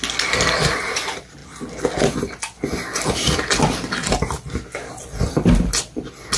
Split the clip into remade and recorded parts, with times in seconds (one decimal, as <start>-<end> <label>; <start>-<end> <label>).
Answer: 0.0-6.4 recorded